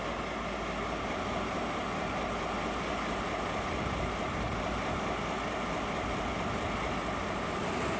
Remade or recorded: recorded